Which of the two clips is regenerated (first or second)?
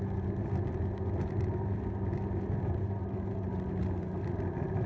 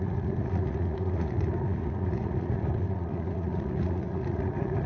second